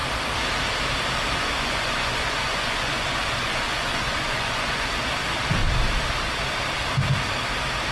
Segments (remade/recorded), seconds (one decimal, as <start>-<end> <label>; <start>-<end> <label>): 0.0-1.4 recorded; 1.4-4.9 remade; 4.9-7.9 recorded